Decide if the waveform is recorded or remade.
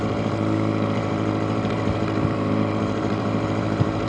remade